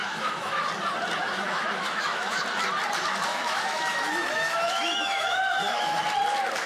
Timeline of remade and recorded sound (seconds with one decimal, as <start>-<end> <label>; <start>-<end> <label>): 0.0-0.7 remade; 0.7-1.2 recorded; 1.2-2.4 remade; 2.4-3.3 recorded; 3.3-6.0 remade; 6.0-6.7 recorded